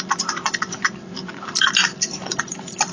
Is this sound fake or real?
fake